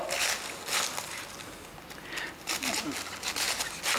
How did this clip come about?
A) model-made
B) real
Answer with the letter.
B